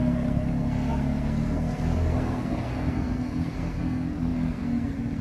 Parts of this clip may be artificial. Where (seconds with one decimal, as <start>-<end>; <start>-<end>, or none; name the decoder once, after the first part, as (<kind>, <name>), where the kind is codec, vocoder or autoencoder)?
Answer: 0.0-5.2 (codec, SNAC)